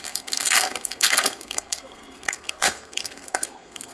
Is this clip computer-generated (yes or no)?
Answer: yes